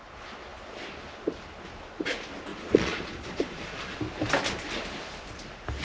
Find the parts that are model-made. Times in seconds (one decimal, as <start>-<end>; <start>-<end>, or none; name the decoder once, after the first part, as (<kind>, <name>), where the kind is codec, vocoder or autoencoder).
2.5-4.0 (vocoder, Vocos)